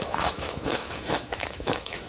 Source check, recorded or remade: remade